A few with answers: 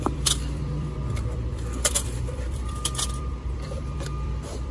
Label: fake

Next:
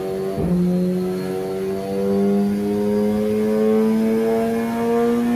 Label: real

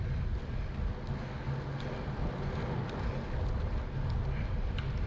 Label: real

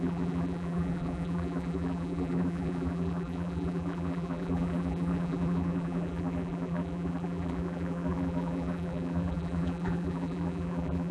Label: fake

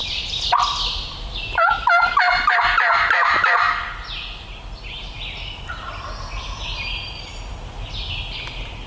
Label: real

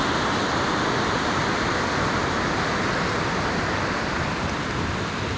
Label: real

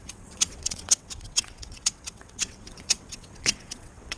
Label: fake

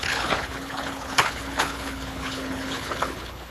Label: fake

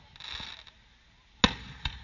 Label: real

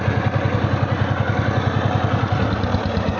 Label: real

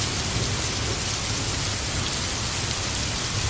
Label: real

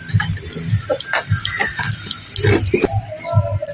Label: real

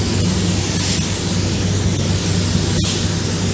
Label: real